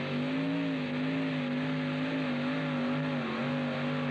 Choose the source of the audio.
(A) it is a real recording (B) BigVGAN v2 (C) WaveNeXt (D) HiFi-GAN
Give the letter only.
A